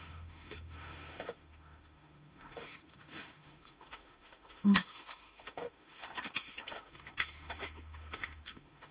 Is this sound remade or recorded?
remade